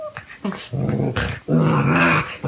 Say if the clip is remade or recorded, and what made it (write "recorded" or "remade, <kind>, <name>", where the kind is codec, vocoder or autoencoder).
recorded